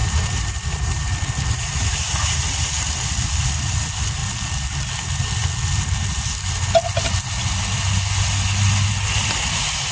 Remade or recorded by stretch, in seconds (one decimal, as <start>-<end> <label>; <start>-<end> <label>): 0.0-2.1 remade; 2.1-9.9 recorded